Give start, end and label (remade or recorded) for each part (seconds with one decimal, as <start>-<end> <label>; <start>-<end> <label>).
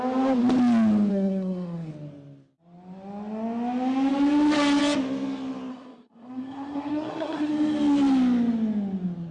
0.0-1.1 recorded; 1.1-1.9 remade; 1.9-5.7 recorded; 5.7-7.5 remade; 7.5-9.3 recorded